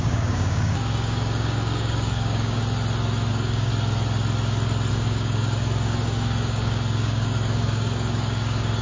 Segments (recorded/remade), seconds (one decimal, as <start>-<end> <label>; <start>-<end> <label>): 0.0-2.6 remade; 2.6-3.3 recorded; 3.3-3.7 remade; 3.7-4.9 recorded; 4.9-8.8 remade